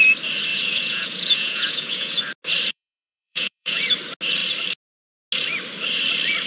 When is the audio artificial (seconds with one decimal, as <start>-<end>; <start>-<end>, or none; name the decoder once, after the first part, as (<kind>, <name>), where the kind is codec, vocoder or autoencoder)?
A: 0.5-2.2 (vocoder, Vocos); 2.7-3.8